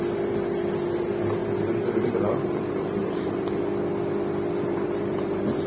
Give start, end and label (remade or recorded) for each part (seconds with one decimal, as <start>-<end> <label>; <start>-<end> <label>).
0.0-1.4 recorded; 1.4-3.6 remade; 3.6-4.7 recorded; 4.7-5.7 remade